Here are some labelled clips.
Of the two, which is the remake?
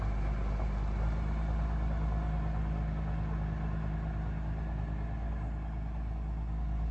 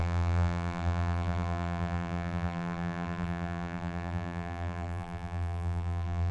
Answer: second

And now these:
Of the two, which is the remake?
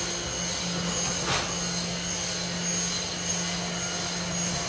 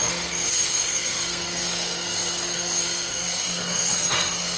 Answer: second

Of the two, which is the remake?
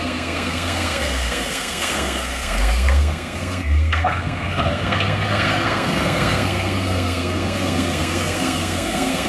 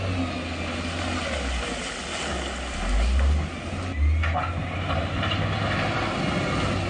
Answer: first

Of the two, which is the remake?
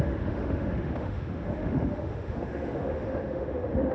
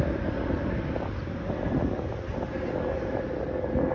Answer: first